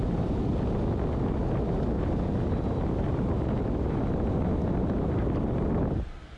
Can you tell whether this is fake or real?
real